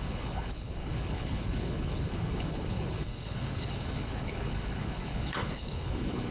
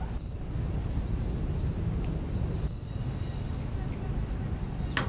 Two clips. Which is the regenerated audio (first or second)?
first